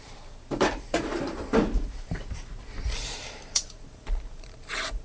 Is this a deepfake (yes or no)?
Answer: yes